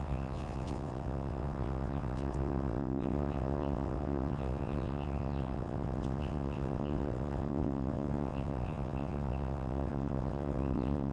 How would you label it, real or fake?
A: fake